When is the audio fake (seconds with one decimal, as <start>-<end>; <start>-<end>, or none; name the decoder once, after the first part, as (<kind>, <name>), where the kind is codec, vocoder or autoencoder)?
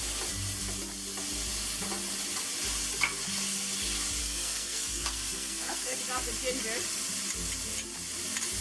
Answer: 4.2-6.0 (codec, SNAC)